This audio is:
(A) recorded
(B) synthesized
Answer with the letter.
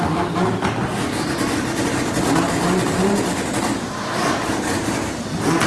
A